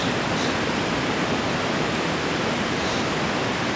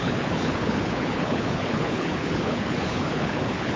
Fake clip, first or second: second